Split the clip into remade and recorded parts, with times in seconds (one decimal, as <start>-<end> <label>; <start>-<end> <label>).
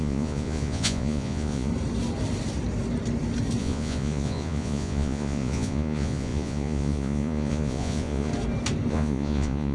0.0-1.7 remade; 1.7-3.6 recorded; 3.6-8.3 remade; 8.3-8.9 recorded; 8.9-9.7 remade